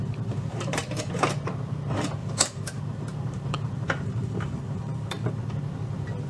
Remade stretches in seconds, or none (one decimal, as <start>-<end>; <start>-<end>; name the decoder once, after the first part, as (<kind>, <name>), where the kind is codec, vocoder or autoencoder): 0.0-1.0 (vocoder, BigVGAN v2); 2.2-5.3